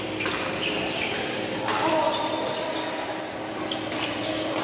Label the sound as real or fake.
real